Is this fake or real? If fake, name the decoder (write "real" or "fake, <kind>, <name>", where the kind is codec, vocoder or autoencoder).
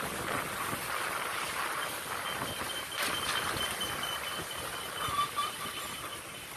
real